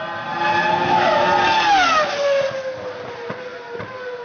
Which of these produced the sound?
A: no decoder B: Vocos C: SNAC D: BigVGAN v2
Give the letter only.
A